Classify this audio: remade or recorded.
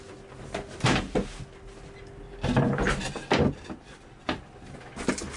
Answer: recorded